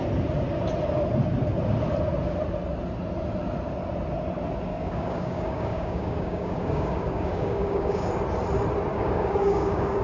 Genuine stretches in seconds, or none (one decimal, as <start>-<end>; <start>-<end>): 0.0-4.7; 8.1-8.9